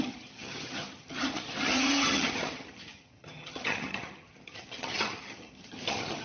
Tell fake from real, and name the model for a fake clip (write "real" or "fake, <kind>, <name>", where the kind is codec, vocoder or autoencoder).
fake, vocoder, HiFi-GAN